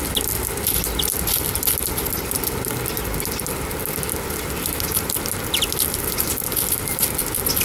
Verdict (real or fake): real